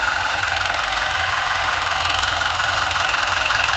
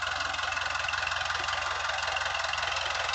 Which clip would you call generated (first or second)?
first